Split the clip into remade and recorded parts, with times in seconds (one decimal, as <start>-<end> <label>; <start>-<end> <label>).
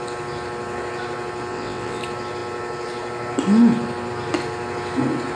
0.0-1.5 recorded; 1.5-2.0 remade; 2.0-5.4 recorded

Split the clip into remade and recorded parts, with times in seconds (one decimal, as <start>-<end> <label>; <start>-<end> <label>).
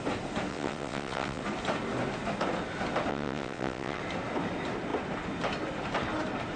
0.0-0.5 recorded; 0.5-1.4 remade; 1.4-3.1 recorded; 3.1-4.0 remade; 4.0-6.6 recorded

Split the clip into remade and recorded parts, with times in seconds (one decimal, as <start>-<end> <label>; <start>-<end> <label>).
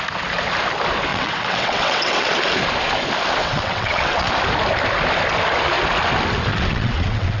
0.0-1.1 recorded; 1.1-2.3 remade; 2.3-3.4 recorded; 3.4-4.3 remade; 4.3-6.5 recorded; 6.5-7.4 remade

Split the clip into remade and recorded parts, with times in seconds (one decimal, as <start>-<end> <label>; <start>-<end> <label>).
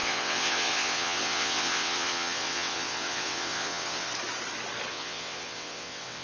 0.0-4.1 remade; 4.1-4.9 recorded; 4.9-6.2 remade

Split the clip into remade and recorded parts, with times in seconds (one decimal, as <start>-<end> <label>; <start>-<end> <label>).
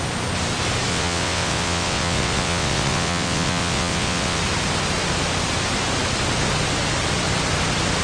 0.0-0.9 recorded; 0.9-4.4 remade; 4.4-8.0 recorded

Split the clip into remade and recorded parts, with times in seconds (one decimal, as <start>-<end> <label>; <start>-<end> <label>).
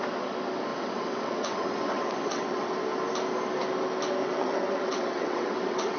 0.0-0.7 recorded; 0.7-2.7 remade; 2.7-4.2 recorded; 4.2-6.0 remade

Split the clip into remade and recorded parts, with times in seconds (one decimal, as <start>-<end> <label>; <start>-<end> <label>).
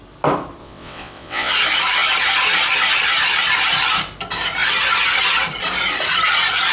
0.0-0.6 recorded; 0.6-1.5 remade; 1.5-6.7 recorded